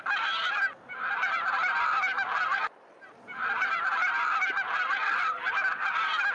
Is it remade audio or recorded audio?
remade